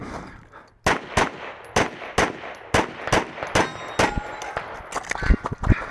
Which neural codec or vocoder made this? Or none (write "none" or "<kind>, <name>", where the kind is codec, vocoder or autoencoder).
none